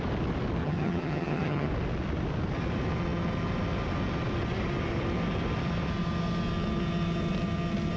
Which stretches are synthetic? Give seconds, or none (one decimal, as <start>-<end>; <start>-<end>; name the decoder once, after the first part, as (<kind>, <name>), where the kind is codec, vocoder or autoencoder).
0.6-1.7 (vocoder, HiFi-GAN)